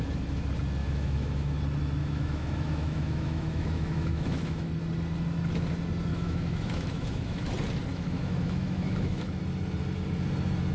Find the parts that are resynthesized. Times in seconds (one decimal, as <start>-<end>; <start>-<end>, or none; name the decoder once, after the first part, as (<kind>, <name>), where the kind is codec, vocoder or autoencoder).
0.8-1.6 (autoencoder, DAC-VAE); 2.0-4.7; 6.1-7.5; 7.9-9.4